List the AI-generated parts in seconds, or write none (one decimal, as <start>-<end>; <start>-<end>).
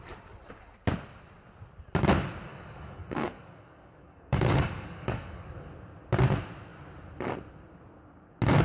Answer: 2.5-5.5